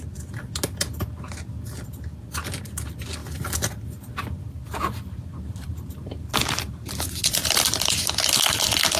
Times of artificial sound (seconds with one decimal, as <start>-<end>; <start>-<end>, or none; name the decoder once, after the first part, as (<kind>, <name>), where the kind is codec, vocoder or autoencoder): 4.6-6.9 (vocoder, BigVGAN v2)